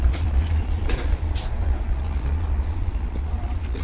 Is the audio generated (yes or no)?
yes